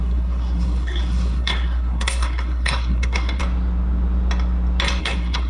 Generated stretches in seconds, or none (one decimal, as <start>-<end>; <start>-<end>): 0.0-3.4; 5.0-5.5